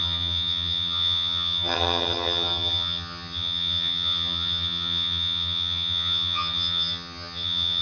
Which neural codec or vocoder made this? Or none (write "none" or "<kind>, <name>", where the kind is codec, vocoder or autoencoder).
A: vocoder, HiFi-GAN